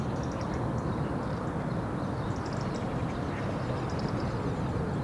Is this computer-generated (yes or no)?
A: no